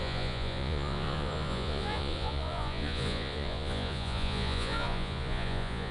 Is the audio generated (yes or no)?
yes